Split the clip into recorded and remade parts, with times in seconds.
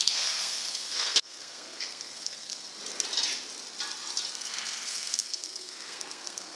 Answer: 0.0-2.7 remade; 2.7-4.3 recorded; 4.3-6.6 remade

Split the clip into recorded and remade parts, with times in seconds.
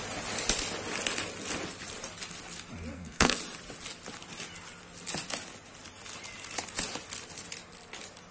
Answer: 0.0-2.9 recorded; 2.9-3.4 remade; 3.4-8.3 recorded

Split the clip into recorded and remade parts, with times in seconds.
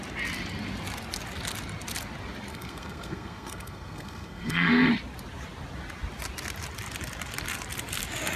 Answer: 0.0-2.5 recorded; 2.5-4.9 remade; 4.9-8.4 recorded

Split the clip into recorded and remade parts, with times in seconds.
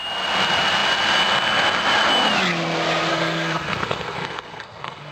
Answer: 0.0-3.1 recorded; 3.1-5.1 remade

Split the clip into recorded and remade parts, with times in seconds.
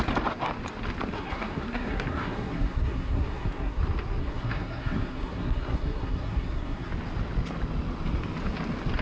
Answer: 0.0-1.1 recorded; 1.1-3.8 remade; 3.8-4.2 recorded; 4.2-6.9 remade; 6.9-9.0 recorded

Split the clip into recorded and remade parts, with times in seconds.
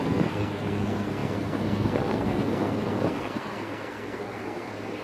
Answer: 0.0-5.0 remade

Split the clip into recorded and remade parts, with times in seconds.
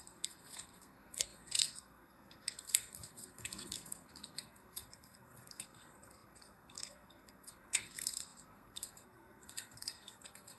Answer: 0.0-10.6 remade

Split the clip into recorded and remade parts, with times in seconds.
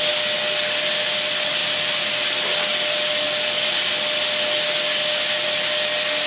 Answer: 0.0-6.3 recorded